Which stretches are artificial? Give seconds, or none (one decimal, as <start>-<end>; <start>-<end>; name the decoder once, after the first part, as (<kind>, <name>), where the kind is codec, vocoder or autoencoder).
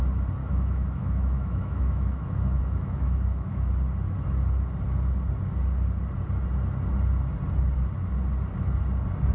0.4-3.7 (autoencoder, DAC-VAE)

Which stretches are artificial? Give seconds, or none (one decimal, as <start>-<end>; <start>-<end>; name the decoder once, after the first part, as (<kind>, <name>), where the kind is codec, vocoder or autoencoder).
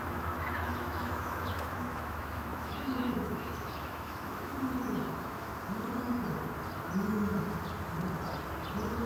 0.0-4.5 (autoencoder, DAC-VAE); 5.1-5.5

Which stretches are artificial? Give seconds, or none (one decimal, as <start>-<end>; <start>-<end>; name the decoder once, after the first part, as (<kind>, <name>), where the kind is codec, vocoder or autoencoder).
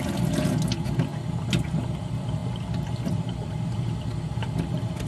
none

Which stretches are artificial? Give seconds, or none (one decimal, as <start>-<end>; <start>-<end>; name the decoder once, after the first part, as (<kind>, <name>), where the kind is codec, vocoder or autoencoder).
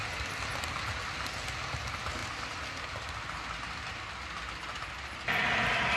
none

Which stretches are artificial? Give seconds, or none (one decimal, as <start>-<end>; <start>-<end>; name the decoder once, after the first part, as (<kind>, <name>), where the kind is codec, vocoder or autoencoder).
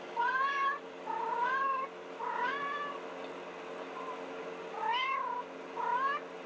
none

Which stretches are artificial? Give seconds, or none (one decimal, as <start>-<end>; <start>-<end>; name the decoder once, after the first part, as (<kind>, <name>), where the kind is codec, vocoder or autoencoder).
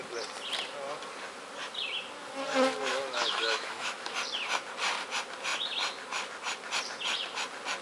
2.9-4.1 (autoencoder, DAC-VAE)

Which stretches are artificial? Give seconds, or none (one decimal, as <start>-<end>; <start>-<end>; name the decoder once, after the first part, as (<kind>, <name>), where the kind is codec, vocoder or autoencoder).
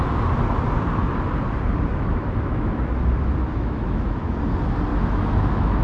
1.9-2.9 (autoencoder, DAC-VAE); 3.5-4.4; 4.9-5.8